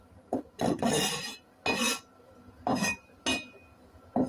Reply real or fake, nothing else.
real